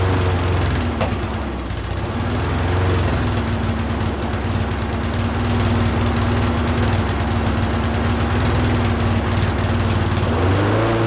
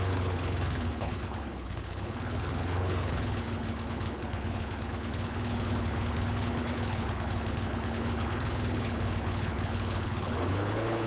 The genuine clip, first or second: first